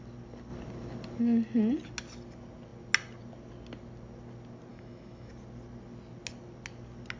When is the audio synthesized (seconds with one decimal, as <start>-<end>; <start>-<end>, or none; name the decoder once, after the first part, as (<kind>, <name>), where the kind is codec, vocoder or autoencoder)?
4.7-5.3 (autoencoder, DAC-VAE)